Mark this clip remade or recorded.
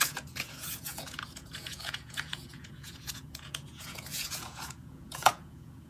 remade